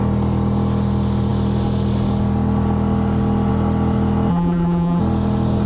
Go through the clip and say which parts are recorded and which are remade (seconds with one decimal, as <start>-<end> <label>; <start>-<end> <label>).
0.0-4.3 recorded; 4.3-5.0 remade; 5.0-5.7 recorded